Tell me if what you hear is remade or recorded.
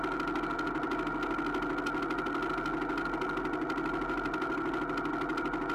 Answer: recorded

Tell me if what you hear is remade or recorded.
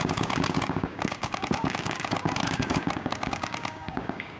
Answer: remade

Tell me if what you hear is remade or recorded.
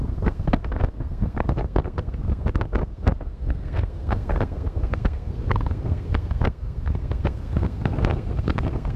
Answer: remade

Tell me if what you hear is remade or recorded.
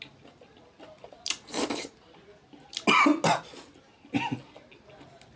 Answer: recorded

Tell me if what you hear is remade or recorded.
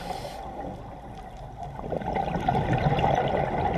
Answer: recorded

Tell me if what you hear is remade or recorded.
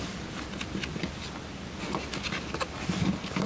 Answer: recorded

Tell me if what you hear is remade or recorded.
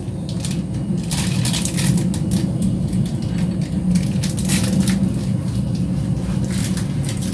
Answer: recorded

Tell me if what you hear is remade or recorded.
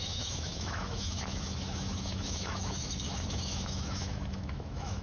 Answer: remade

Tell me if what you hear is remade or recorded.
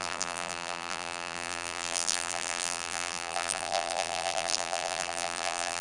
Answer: remade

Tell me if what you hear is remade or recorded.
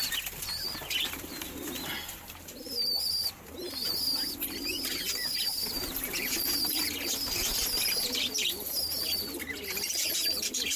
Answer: remade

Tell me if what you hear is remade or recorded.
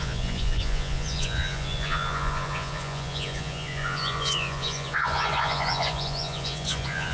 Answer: remade